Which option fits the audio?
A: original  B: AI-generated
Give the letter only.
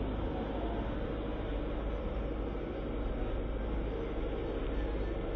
A